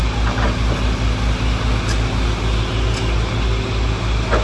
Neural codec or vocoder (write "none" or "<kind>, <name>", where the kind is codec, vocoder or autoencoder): none